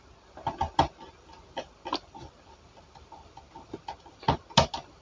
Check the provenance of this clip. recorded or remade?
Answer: recorded